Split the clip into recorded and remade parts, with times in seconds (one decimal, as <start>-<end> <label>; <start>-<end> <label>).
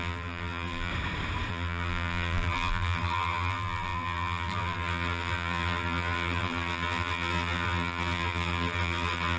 0.0-0.9 remade; 0.9-1.5 recorded; 1.5-9.4 remade